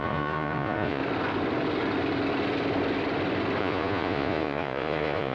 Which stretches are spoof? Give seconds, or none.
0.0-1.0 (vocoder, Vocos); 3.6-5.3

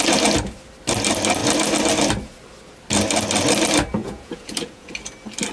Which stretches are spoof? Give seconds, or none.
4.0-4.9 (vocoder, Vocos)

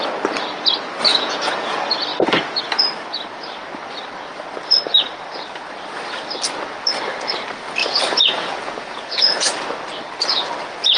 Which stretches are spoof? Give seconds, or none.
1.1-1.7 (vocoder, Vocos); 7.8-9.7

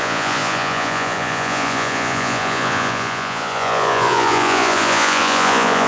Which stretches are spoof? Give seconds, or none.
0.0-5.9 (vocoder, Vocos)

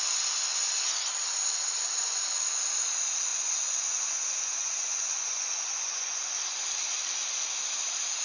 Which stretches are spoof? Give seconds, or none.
3.3-6.2 (vocoder, Vocos)